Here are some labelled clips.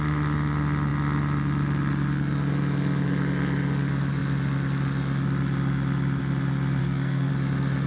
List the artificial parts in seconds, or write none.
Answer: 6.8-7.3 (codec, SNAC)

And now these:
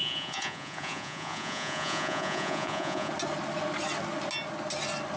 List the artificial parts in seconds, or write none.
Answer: 0.0-3.1 (vocoder, Vocos)

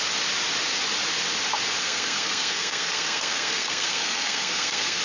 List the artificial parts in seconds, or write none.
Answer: 1.8-5.0 (codec, SNAC)

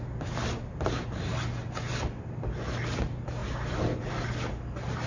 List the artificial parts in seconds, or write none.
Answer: none

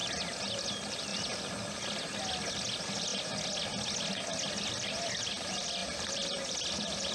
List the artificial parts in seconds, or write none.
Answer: 0.6-1.1 (vocoder, BigVGAN v2); 2.5-3.1; 4.5-7.1

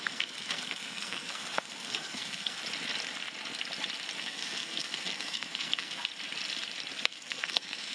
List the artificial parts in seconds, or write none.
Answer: 0.0-2.6 (codec, SNAC); 4.2-6.1; 7.0-7.9

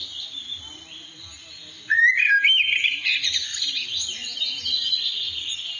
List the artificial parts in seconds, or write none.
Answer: none